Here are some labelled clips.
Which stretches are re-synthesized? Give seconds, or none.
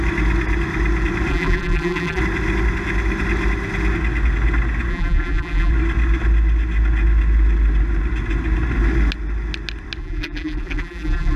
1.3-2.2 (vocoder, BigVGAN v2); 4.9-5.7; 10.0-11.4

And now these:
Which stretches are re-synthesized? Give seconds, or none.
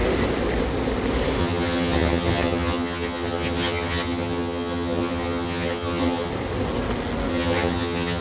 1.4-6.3 (vocoder, HiFi-GAN); 7.3-8.2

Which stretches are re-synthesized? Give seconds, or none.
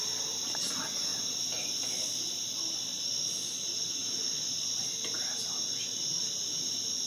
none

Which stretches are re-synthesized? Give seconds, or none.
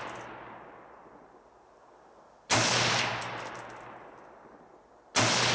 none